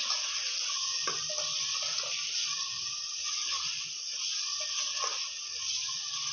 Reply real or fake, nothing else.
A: fake